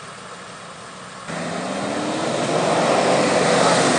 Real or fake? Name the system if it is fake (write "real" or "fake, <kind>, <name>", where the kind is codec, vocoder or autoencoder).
real